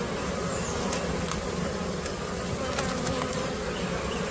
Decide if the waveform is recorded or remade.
recorded